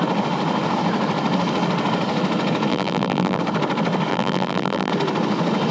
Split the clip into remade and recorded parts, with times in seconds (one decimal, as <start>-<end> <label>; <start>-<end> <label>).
0.0-2.7 recorded; 2.7-3.4 remade; 3.4-4.1 recorded; 4.1-4.9 remade; 4.9-5.7 recorded